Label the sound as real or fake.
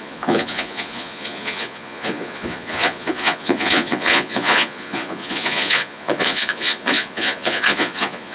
fake